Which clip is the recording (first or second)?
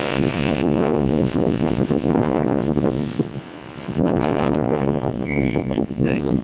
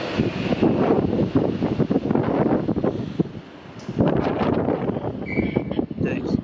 second